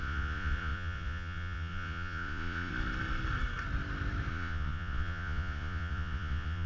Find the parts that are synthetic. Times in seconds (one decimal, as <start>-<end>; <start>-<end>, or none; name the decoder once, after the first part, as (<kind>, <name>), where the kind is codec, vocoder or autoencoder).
0.0-2.7 (vocoder, Vocos); 4.3-6.7